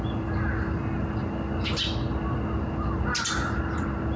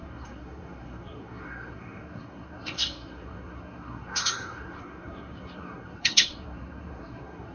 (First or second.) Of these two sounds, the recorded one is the first